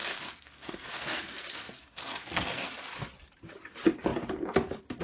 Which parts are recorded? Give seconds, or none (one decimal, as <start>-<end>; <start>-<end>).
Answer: 3.0-5.0